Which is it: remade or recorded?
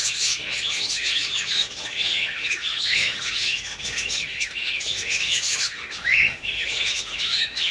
remade